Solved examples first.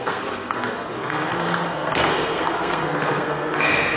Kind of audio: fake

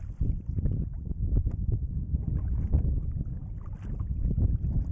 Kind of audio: real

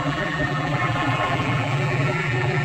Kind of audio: fake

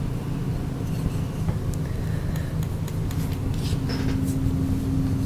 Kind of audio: real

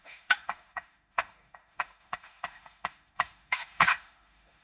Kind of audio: fake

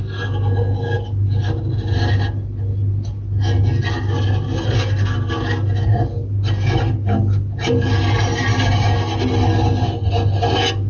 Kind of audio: real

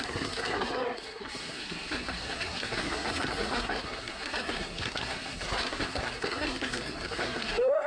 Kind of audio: fake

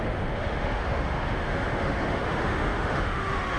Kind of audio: fake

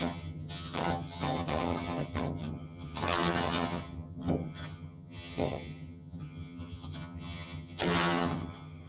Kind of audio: fake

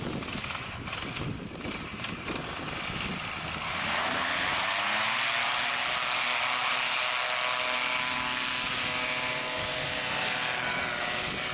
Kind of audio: real